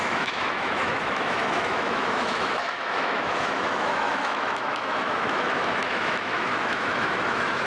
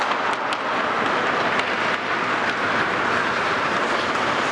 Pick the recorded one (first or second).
second